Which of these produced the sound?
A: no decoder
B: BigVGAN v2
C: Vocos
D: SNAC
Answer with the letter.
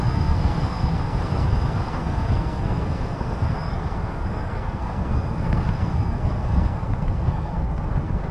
D